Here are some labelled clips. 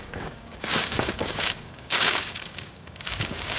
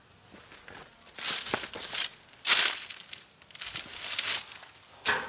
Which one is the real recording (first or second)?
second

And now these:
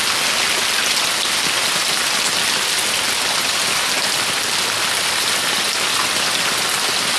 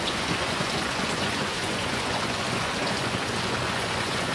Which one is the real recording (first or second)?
first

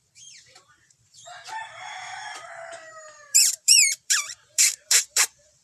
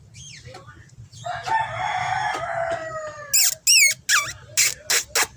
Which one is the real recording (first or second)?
second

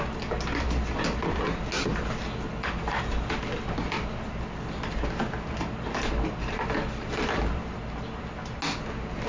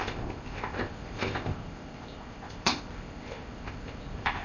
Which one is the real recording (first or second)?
first